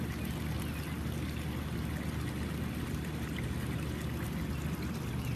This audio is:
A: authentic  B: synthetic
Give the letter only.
A